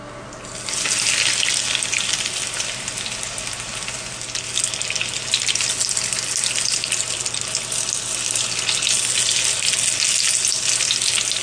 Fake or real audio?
real